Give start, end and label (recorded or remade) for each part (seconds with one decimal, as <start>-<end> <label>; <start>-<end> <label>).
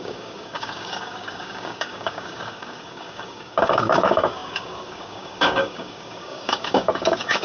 0.0-7.4 remade